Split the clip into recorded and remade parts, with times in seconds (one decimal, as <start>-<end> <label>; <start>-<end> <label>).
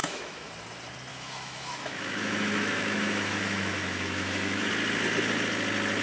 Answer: 0.0-0.5 remade; 0.5-1.1 recorded; 1.1-4.7 remade; 4.7-6.0 recorded